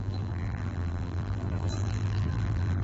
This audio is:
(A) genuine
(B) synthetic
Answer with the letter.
B